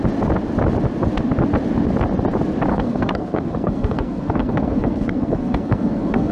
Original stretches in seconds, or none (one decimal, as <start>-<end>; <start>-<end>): 0.0-2.7